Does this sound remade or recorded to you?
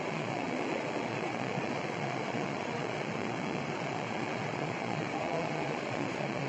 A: remade